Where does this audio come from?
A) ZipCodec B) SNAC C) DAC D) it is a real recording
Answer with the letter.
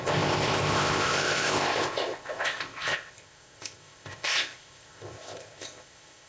A